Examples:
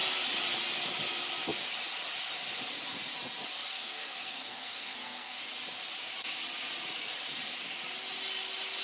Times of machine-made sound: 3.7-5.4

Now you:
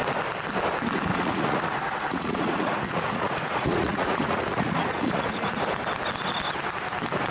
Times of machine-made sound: 1.1-5.5